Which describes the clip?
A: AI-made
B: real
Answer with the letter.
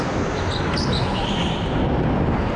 B